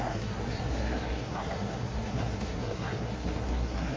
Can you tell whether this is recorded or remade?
remade